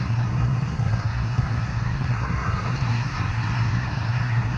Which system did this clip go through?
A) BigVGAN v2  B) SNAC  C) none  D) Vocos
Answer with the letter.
B